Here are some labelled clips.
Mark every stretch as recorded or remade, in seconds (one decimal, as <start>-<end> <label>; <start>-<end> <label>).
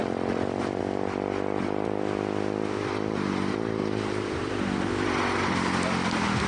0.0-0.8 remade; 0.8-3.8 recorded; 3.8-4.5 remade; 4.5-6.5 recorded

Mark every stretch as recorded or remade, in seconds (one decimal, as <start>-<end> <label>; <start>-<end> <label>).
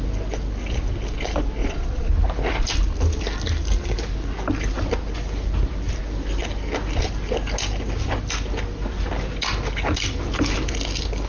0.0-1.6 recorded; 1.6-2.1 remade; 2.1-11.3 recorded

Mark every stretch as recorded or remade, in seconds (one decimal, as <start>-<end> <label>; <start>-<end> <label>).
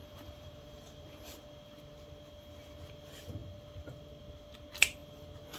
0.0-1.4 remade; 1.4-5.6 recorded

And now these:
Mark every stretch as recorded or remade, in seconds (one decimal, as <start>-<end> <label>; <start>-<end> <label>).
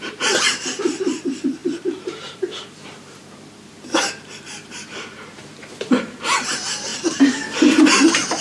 0.0-8.4 remade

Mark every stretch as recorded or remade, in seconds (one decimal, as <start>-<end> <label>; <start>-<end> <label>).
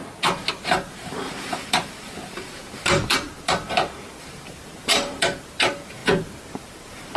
0.0-0.6 recorded; 0.6-7.2 remade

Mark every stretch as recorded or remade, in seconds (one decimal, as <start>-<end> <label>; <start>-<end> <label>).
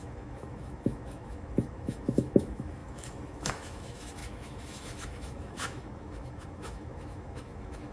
0.0-7.9 remade